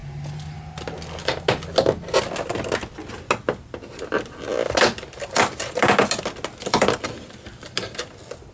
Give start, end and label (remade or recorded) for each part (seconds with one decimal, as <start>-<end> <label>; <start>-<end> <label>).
0.0-8.5 recorded